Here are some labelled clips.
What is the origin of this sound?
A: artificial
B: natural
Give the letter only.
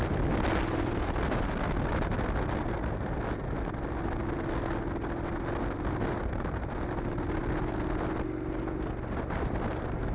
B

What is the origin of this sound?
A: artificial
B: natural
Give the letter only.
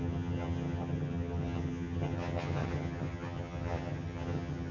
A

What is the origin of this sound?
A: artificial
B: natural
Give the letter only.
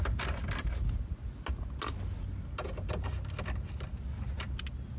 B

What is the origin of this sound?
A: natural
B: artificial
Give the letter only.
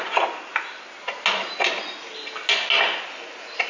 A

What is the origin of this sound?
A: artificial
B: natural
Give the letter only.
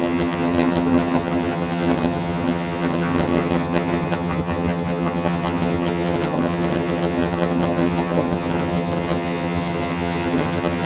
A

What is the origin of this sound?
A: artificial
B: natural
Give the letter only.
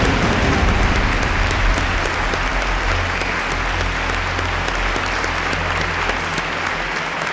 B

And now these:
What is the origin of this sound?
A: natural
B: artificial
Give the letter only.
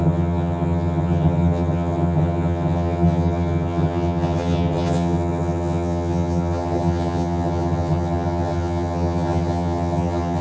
B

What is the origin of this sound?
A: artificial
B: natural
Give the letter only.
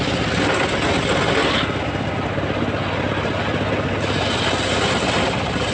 B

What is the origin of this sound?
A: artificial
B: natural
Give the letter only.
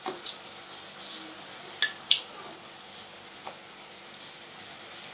B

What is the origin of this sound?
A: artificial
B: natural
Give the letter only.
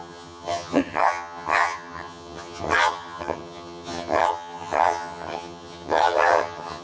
A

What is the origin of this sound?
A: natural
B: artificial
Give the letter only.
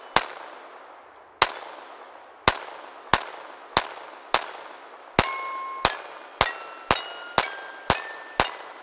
A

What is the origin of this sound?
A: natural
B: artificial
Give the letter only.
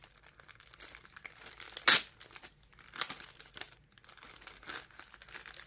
A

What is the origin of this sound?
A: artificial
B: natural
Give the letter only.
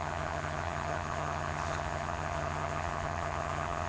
A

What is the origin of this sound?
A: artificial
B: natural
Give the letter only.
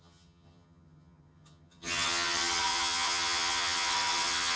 A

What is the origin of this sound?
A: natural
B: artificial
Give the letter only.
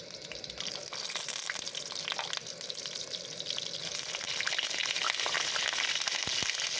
A